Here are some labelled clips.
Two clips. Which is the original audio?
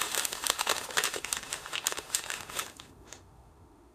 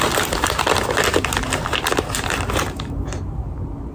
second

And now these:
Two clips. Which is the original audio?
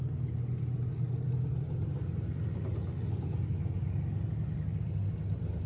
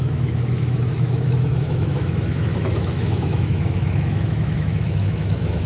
first